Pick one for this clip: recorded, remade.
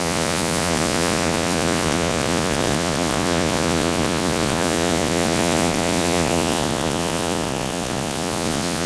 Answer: remade